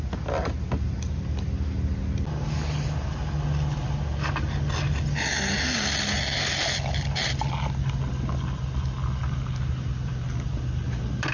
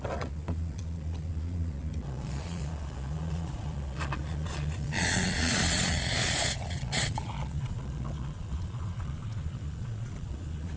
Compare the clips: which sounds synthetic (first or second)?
second